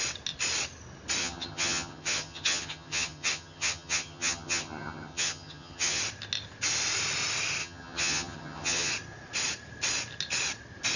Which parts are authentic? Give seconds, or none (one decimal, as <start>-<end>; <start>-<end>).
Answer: 0.0-1.2; 6.0-7.6; 8.9-11.0